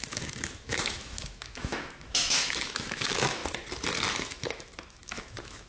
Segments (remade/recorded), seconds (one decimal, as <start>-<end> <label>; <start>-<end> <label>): 0.0-3.4 remade; 3.4-4.1 recorded; 4.1-5.7 remade